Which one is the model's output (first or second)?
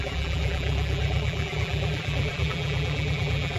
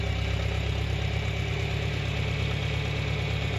first